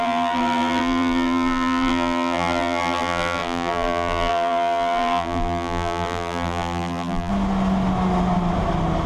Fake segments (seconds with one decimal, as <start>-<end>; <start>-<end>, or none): 0.0-7.3